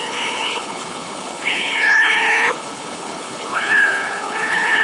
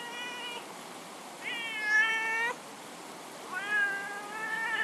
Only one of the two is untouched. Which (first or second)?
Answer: second